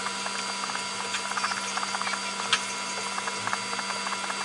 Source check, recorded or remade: recorded